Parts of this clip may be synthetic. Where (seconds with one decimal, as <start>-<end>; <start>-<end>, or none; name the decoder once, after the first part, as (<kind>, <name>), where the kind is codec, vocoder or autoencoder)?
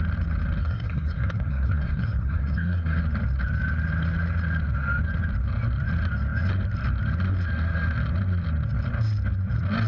0.6-3.0 (codec, SNAC)